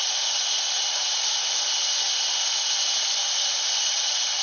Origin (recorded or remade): recorded